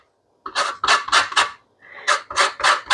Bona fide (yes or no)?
yes